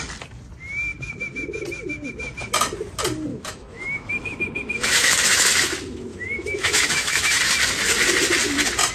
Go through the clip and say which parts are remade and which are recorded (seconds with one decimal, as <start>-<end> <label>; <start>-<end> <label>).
0.0-3.3 recorded; 3.3-5.5 remade; 5.5-6.1 recorded; 6.1-7.4 remade; 7.4-8.9 recorded